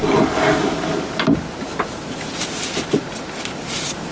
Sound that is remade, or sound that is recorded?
recorded